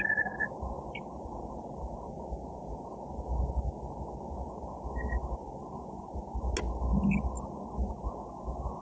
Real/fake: real